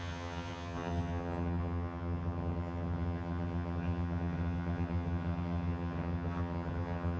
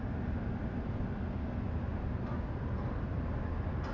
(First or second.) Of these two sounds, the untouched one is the second